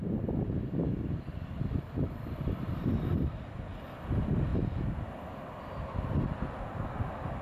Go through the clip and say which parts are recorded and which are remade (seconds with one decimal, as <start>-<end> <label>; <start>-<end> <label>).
0.0-1.0 recorded; 1.0-4.5 remade; 4.5-5.6 recorded; 5.6-7.4 remade